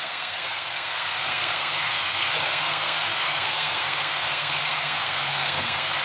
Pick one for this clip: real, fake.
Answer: fake